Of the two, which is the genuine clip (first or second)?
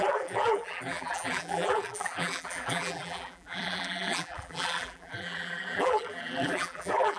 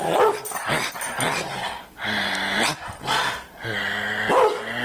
second